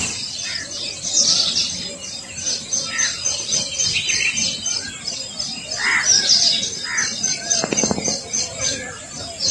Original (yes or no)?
yes